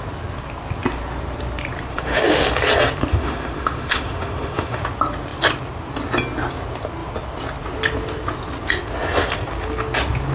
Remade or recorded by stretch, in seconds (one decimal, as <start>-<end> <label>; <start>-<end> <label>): 0.0-1.9 recorded; 1.9-2.5 remade; 2.5-3.1 recorded; 3.1-4.8 remade; 4.8-10.3 recorded